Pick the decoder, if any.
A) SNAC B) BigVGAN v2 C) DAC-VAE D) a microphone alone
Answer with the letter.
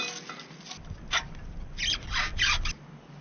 D